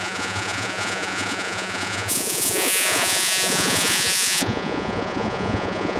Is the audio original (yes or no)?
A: no